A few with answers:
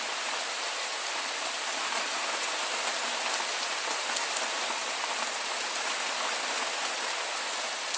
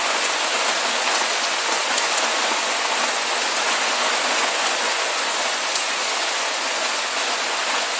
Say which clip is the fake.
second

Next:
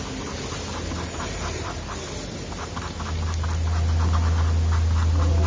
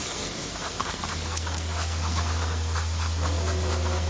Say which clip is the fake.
second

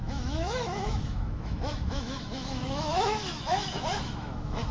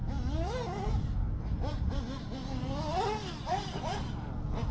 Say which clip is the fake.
first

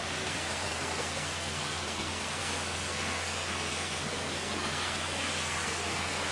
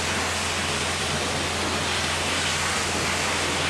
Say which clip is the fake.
first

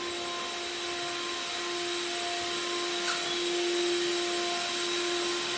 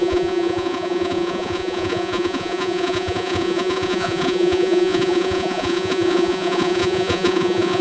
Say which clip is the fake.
second